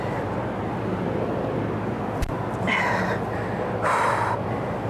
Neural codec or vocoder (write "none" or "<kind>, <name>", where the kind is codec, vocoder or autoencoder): none